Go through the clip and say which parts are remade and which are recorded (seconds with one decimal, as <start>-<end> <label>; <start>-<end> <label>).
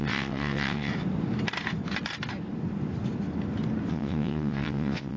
0.0-0.9 remade; 0.9-3.9 recorded; 3.9-5.2 remade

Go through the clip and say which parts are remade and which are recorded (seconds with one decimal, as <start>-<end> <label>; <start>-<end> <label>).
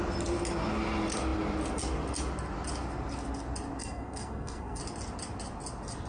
0.0-3.8 recorded; 3.8-4.8 remade; 4.8-6.1 recorded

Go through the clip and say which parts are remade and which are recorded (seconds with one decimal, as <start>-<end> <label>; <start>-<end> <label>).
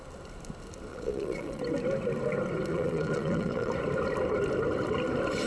0.0-0.9 recorded; 0.9-1.6 remade; 1.6-2.7 recorded; 2.7-3.7 remade; 3.7-5.5 recorded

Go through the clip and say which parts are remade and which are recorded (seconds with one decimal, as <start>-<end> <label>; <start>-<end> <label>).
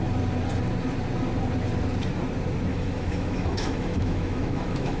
0.0-2.7 recorded; 2.7-5.0 remade